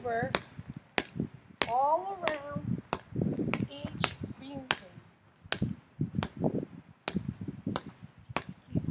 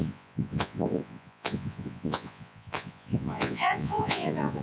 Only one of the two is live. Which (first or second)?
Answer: first